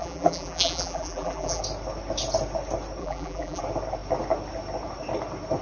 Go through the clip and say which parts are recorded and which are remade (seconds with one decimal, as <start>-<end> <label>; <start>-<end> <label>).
0.0-1.6 remade; 1.6-3.0 recorded; 3.0-3.6 remade; 3.6-5.6 recorded